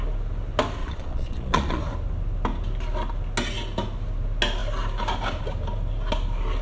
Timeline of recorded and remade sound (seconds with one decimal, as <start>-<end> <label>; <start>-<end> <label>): 0.0-0.8 recorded; 0.8-1.8 remade; 1.8-6.6 recorded

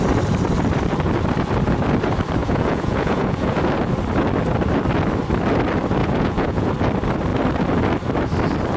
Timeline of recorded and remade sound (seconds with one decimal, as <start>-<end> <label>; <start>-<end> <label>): 0.0-2.4 recorded; 2.4-3.5 remade; 3.5-6.0 recorded; 6.0-6.7 remade; 6.7-8.8 recorded

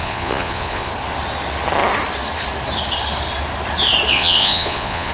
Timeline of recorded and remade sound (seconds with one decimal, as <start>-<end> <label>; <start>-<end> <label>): 0.0-0.9 remade; 0.9-4.1 recorded; 4.1-5.1 remade

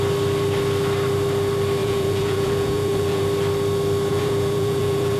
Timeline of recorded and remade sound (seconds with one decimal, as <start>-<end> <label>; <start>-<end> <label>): 0.0-1.8 recorded; 1.8-3.2 remade; 3.2-4.1 recorded; 4.1-5.2 remade

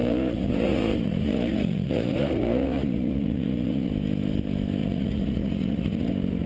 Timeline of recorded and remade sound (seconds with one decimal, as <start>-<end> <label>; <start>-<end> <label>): 0.0-3.9 remade; 3.9-4.8 recorded; 4.8-6.1 remade; 6.1-6.5 recorded